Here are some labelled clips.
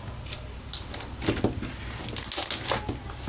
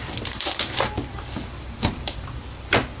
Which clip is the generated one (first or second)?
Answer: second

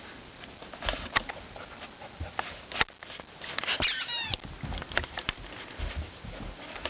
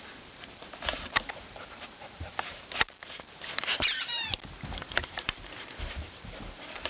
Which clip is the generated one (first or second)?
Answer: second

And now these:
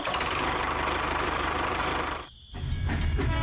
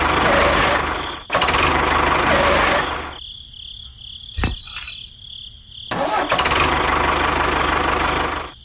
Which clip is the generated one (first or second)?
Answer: first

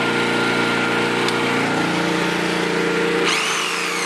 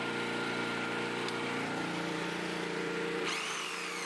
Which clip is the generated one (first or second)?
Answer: second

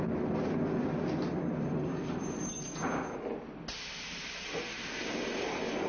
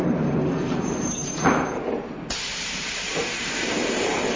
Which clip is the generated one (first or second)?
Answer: second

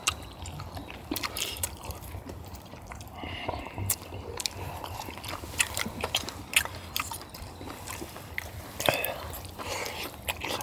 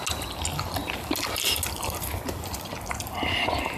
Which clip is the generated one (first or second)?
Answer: first